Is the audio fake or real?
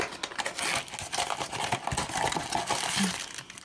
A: real